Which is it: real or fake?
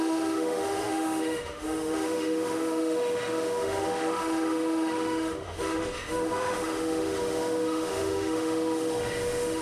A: fake